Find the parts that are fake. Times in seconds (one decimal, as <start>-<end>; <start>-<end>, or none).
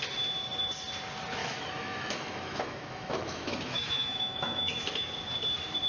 1.4-4.9